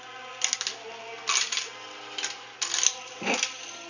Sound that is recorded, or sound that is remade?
recorded